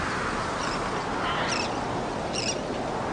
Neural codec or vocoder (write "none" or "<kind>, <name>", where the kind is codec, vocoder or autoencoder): none